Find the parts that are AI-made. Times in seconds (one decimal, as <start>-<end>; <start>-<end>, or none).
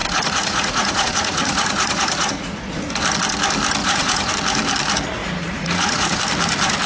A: 0.0-2.9; 3.8-4.3; 5.2-6.2